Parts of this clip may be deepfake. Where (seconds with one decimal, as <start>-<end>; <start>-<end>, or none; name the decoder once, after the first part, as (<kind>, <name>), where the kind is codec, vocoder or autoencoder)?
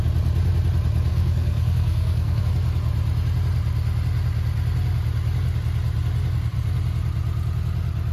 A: 1.1-2.4 (codec, SNAC)